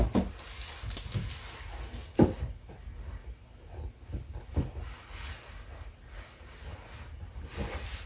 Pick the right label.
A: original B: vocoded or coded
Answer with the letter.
A